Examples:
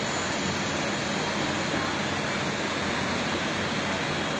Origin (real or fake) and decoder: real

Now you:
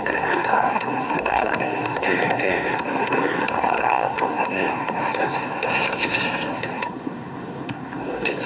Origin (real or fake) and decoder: fake, codec, SNAC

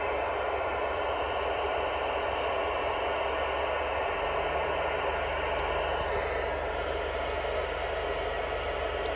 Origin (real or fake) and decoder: real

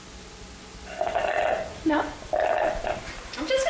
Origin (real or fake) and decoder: real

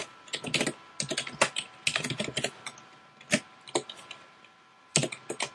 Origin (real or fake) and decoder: real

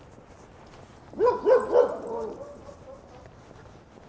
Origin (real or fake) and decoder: real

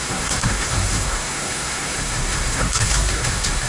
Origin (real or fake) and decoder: fake, codec, SNAC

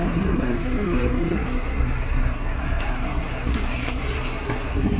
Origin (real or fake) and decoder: fake, codec, SNAC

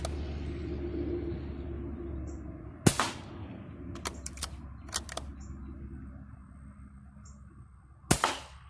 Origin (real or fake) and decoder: real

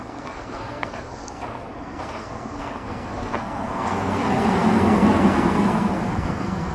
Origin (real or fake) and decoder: fake, codec, SNAC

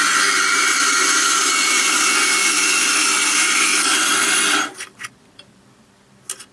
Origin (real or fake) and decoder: real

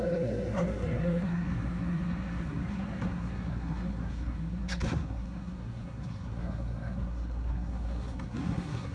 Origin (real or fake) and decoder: fake, codec, SNAC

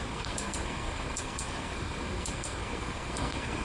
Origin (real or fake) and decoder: fake, codec, SNAC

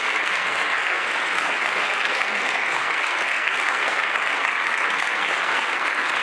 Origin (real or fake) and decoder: fake, codec, SNAC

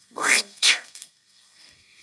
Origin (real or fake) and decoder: fake, codec, SNAC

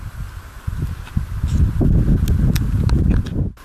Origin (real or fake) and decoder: real